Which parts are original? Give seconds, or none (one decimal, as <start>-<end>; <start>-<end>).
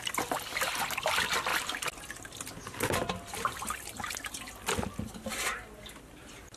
0.0-6.6